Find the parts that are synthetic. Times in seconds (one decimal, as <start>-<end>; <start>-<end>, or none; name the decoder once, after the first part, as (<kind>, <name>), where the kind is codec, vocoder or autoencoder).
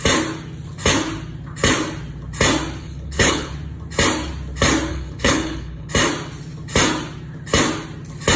2.8-3.5 (codec, HILCodec); 4.9-5.9